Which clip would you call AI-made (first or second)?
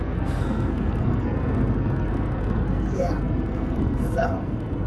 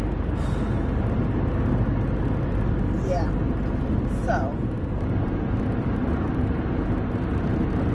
first